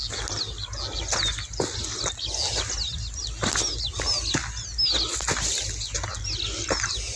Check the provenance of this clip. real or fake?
real